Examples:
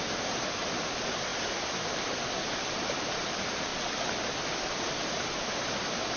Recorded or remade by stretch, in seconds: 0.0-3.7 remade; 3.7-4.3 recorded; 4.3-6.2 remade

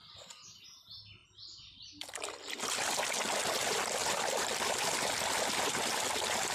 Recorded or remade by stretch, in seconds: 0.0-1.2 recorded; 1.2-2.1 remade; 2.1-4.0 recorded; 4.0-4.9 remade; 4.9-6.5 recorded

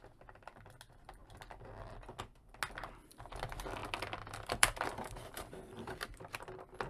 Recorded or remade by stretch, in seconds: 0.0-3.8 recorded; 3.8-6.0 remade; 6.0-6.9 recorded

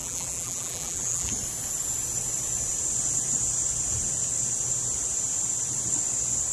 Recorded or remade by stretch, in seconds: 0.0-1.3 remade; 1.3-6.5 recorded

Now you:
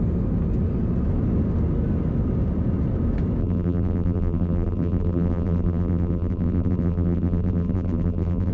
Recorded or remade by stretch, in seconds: 0.0-3.4 recorded; 3.4-8.5 remade

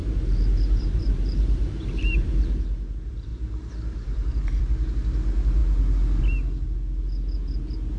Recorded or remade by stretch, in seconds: 0.0-2.6 remade; 2.6-3.3 recorded; 3.3-4.6 remade; 4.6-8.0 recorded

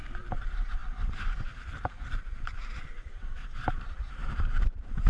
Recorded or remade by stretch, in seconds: 0.0-0.8 remade; 0.8-1.4 recorded; 1.4-5.1 remade

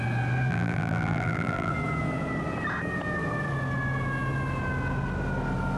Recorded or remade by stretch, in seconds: 0.0-0.5 recorded; 0.5-1.7 remade; 1.7-5.8 recorded